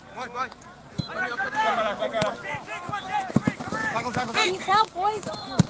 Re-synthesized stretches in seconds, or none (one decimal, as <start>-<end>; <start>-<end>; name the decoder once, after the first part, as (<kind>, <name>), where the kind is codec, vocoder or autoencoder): 1.3-2.0 (codec, DAC); 3.8-5.3